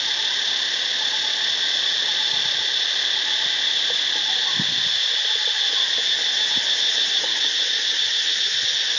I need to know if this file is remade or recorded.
recorded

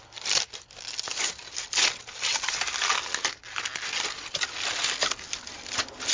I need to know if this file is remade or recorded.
recorded